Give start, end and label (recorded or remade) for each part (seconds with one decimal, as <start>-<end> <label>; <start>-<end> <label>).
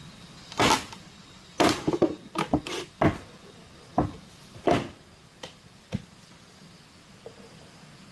0.0-8.1 recorded